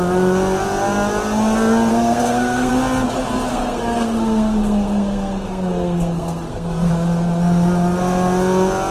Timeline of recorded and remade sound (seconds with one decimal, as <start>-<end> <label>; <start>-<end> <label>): 0.0-1.9 recorded; 1.9-2.7 remade; 2.7-3.5 recorded; 3.5-6.9 remade; 6.9-8.9 recorded